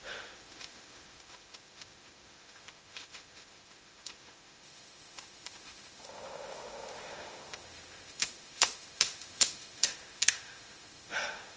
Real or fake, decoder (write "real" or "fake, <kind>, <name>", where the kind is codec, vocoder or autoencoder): fake, autoencoder, DAC-VAE